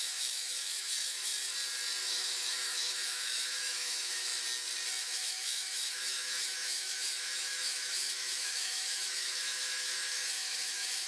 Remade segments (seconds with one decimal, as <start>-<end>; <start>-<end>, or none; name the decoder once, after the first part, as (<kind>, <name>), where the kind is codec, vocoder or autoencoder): 0.0-1.3 (autoencoder, DAC-VAE); 2.0-4.3; 5.0-11.1